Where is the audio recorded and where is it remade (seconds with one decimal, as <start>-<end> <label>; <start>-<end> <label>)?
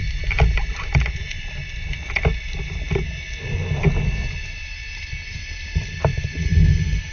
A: 0.0-7.1 recorded